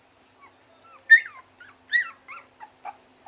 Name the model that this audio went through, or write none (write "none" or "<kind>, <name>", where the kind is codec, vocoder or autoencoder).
vocoder, BigVGAN v2